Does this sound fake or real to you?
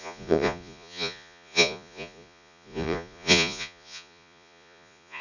fake